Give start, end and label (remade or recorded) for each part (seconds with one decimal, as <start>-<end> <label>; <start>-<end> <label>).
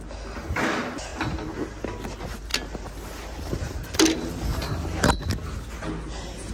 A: 0.0-4.5 recorded; 4.5-5.1 remade; 5.1-6.5 recorded